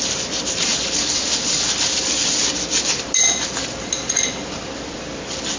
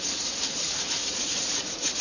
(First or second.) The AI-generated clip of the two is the second